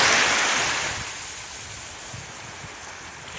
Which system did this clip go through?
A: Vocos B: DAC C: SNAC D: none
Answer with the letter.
D